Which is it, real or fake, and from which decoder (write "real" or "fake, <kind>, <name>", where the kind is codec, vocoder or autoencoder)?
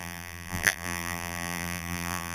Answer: fake, vocoder, BigVGAN v2